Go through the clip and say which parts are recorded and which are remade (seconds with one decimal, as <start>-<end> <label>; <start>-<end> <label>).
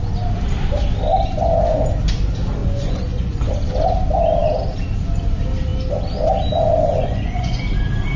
0.0-2.6 recorded; 2.6-3.5 remade; 3.5-6.9 recorded; 6.9-7.6 remade; 7.6-8.2 recorded